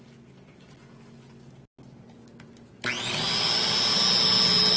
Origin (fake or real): real